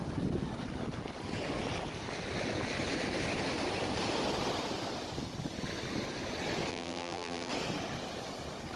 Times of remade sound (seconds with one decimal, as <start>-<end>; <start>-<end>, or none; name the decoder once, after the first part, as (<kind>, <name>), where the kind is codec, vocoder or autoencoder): 6.7-7.5 (vocoder, BigVGAN v2)